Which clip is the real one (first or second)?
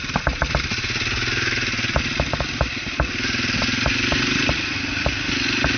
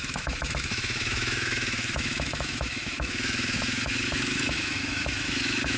first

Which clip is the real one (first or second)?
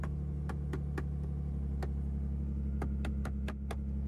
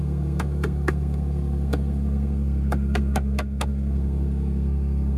first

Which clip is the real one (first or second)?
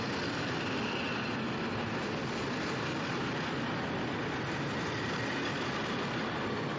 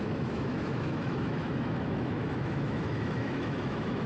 first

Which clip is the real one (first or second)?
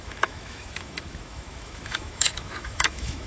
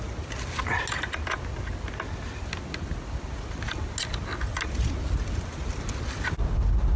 second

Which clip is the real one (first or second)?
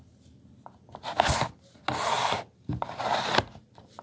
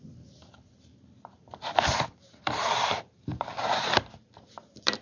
first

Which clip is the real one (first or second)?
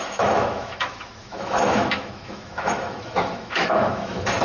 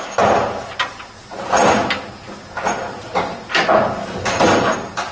second